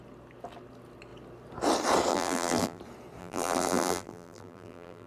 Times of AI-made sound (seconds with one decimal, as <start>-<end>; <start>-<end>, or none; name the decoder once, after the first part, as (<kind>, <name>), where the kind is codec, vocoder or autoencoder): 2.1-2.8 (vocoder, BigVGAN v2); 3.2-5.1